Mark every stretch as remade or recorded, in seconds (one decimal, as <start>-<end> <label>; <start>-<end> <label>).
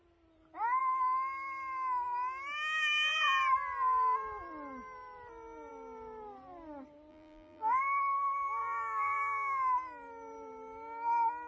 0.0-7.1 recorded; 7.1-7.8 remade; 7.8-8.6 recorded; 8.6-9.6 remade; 9.6-11.5 recorded